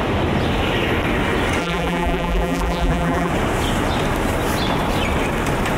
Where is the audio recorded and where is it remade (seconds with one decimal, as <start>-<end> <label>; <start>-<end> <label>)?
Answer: 0.0-1.6 recorded; 1.6-3.3 remade; 3.3-5.8 recorded

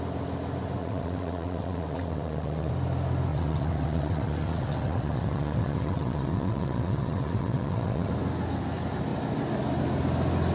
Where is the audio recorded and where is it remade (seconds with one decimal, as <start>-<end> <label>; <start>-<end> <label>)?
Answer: 0.0-0.8 recorded; 0.8-2.7 remade; 2.7-3.3 recorded; 3.3-8.1 remade; 8.1-10.5 recorded

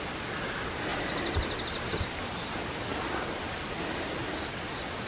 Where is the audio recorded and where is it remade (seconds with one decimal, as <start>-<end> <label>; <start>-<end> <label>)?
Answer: 0.0-5.1 recorded

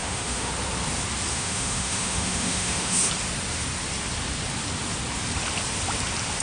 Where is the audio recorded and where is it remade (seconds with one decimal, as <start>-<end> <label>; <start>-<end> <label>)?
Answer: 0.0-0.5 remade; 0.5-1.3 recorded; 1.3-3.1 remade; 3.1-6.4 recorded

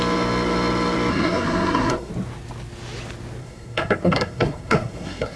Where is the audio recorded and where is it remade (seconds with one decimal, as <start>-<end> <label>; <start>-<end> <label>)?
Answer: 0.0-1.1 recorded; 1.1-2.1 remade; 2.1-3.4 recorded; 3.4-5.4 remade

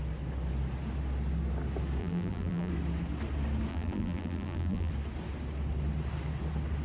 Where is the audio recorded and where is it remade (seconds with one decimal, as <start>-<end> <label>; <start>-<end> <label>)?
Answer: 0.0-2.0 recorded; 2.0-2.7 remade; 2.7-3.7 recorded; 3.7-4.9 remade; 4.9-6.8 recorded

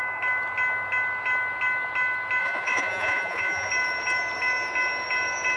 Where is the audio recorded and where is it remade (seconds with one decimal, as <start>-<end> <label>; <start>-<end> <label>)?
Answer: 0.0-2.4 recorded; 2.4-3.7 remade; 3.7-5.6 recorded